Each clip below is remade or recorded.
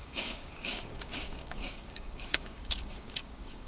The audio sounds remade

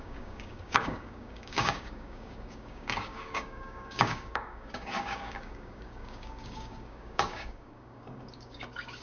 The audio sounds remade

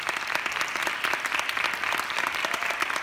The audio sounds recorded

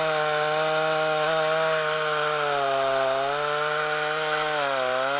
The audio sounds recorded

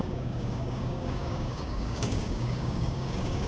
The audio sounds remade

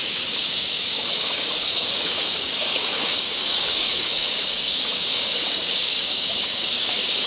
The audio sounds remade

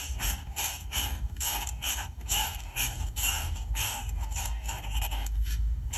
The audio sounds remade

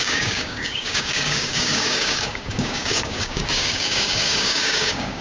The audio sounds remade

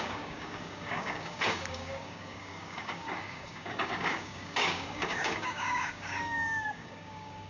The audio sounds remade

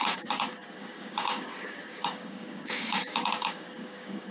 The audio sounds remade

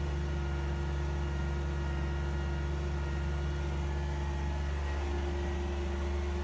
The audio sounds recorded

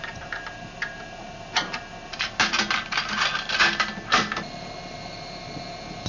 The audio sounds recorded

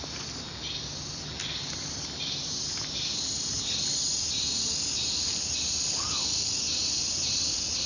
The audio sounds recorded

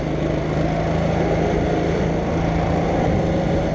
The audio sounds recorded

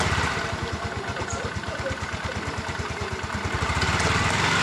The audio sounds recorded